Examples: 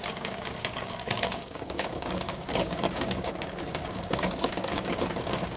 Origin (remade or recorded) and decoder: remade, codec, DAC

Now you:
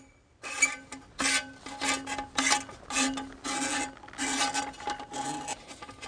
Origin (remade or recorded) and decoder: recorded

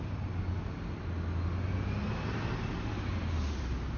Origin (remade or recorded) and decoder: recorded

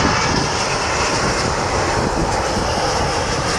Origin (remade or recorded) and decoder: recorded